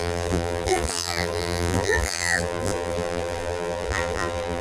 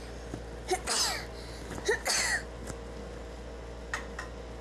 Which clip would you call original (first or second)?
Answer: second